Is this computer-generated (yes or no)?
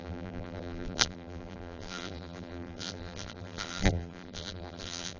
yes